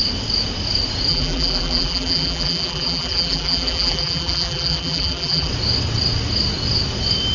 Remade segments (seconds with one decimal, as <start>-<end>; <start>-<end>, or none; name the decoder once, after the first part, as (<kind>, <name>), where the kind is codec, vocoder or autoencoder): 1.1-5.5 (vocoder, BigVGAN v2)